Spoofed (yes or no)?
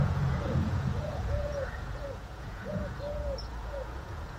yes